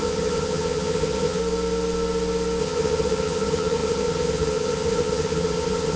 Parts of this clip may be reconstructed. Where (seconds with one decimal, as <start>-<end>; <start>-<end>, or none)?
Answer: 0.0-1.4; 2.6-6.0